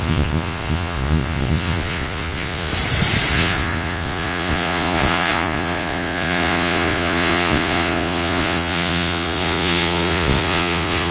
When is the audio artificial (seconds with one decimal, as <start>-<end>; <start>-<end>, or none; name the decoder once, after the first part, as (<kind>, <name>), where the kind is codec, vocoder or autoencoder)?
0.0-2.7 (vocoder, Vocos); 3.3-11.1